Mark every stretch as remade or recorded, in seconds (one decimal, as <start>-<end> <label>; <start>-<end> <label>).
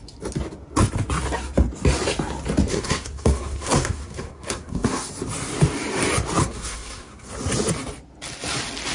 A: 0.0-2.7 recorded; 2.7-5.1 remade; 5.1-6.4 recorded; 6.4-7.3 remade; 7.3-8.9 recorded